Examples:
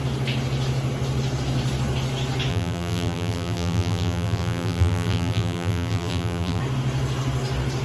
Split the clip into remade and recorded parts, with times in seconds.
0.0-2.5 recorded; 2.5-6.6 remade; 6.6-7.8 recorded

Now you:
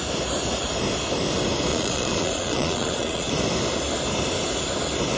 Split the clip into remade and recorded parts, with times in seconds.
0.0-1.7 recorded; 1.7-3.3 remade; 3.3-5.2 recorded

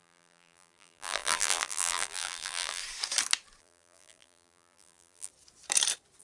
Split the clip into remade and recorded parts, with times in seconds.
0.0-2.8 remade; 2.8-3.6 recorded; 3.6-5.3 remade; 5.3-6.2 recorded

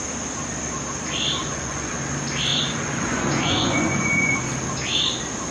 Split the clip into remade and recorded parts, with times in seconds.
0.0-1.4 recorded; 1.4-1.9 remade; 1.9-2.5 recorded; 2.5-4.4 remade; 4.4-5.5 recorded

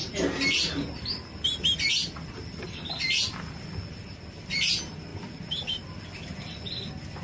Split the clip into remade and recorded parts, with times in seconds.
0.0-7.2 recorded

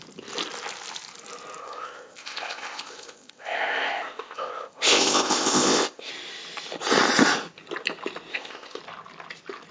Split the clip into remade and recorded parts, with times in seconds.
0.0-1.6 recorded; 1.6-6.1 remade; 6.1-8.3 recorded; 8.3-8.8 remade; 8.8-9.7 recorded

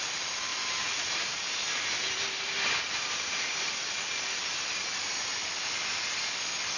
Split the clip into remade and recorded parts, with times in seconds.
0.0-0.5 recorded; 0.5-3.7 remade; 3.7-6.8 recorded